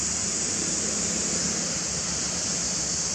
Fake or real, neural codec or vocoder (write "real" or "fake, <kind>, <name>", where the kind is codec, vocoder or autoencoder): real